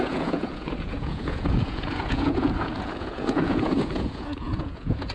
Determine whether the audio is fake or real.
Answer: fake